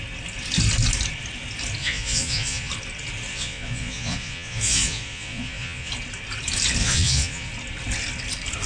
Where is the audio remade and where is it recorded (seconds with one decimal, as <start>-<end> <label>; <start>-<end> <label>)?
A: 0.0-1.8 recorded; 1.8-2.7 remade; 2.7-3.3 recorded; 3.3-5.9 remade; 5.9-6.8 recorded; 6.8-7.5 remade; 7.5-8.7 recorded